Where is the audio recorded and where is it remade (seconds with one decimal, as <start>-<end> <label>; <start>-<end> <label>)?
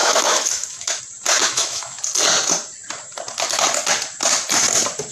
0.0-1.0 remade; 1.0-1.4 recorded; 1.4-2.0 remade; 2.0-5.1 recorded